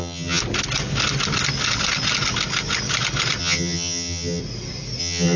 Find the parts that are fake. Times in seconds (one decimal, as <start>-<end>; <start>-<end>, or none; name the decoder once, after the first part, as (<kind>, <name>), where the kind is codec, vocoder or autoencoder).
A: 0.0-0.4 (vocoder, HiFi-GAN); 3.4-4.4; 5.0-5.4